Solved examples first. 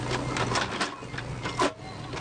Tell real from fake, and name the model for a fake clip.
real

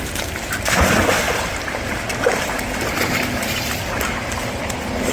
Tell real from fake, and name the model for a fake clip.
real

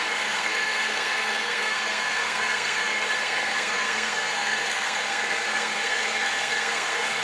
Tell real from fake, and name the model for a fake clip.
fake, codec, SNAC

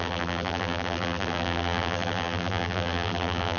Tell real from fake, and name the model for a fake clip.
fake, vocoder, BigVGAN v2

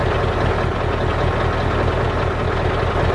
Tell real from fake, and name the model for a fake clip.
real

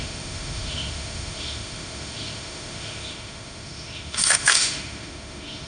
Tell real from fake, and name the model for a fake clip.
fake, autoencoder, DAC-VAE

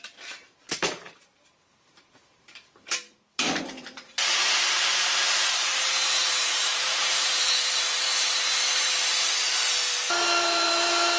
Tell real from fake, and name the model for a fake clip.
fake, vocoder, BigVGAN v2